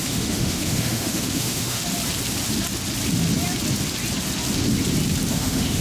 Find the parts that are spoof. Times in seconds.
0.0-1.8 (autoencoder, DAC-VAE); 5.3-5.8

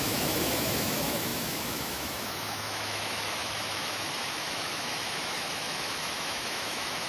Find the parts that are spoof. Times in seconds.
0.0-7.1 (autoencoder, DAC-VAE)

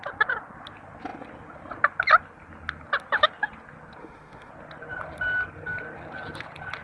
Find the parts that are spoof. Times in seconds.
4.0-4.5 (autoencoder, DAC-VAE)

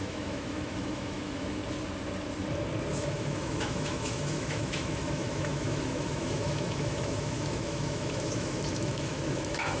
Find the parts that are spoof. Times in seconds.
0.0-1.6 (autoencoder, DAC-VAE); 2.9-9.8